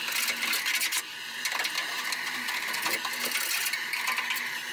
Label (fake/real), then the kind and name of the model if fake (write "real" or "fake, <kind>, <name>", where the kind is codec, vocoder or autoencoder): real